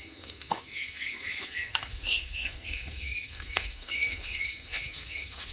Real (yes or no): no